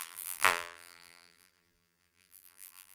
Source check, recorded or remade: remade